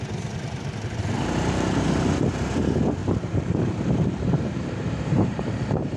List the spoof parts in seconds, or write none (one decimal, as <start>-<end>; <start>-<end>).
3.0-5.4